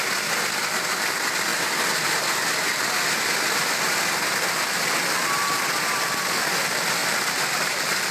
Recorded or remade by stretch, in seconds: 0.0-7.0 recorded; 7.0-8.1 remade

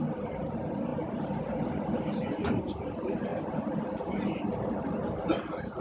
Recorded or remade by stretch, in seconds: 0.0-0.9 recorded; 0.9-1.7 remade; 1.7-3.3 recorded; 3.3-4.1 remade; 4.1-5.8 recorded

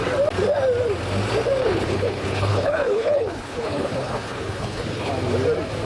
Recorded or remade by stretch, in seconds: 0.0-1.6 recorded; 1.6-5.1 remade; 5.1-5.8 recorded